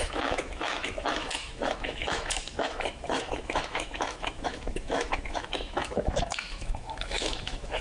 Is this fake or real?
fake